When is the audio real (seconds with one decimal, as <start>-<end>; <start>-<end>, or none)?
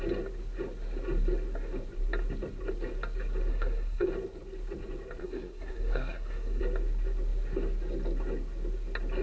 0.0-3.5; 4.1-5.2; 6.6-9.2